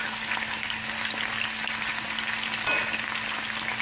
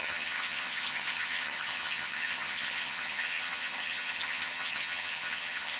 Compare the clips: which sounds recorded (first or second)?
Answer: first